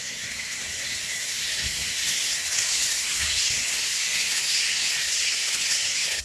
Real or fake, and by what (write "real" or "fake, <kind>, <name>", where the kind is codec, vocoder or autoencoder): fake, codec, SNAC